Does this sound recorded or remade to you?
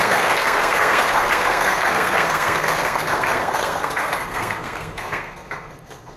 remade